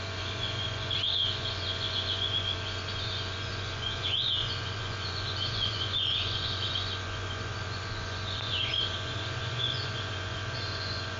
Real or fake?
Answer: fake